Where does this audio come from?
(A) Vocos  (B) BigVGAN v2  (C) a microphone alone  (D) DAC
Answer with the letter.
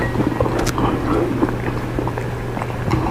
C